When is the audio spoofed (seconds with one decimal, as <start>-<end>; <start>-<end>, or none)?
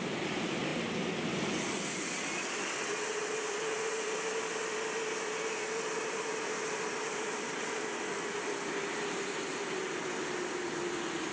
none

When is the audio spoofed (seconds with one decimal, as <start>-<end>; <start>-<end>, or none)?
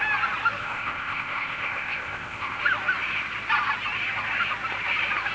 0.6-2.6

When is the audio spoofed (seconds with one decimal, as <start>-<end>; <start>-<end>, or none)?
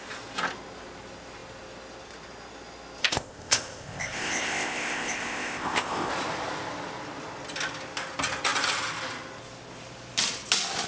3.0-6.1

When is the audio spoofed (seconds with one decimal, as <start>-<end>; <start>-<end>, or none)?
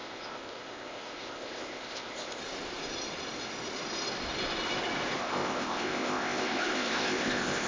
0.0-2.4; 5.2-7.7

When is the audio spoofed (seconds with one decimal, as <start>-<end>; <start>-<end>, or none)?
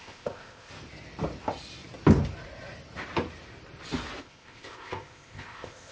0.0-0.7; 4.2-5.9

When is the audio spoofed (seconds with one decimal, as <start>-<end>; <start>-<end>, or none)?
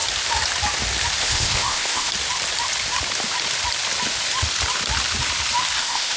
1.2-2.1; 5.8-6.2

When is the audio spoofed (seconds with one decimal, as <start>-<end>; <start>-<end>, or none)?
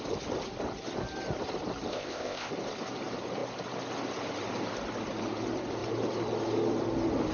1.9-2.5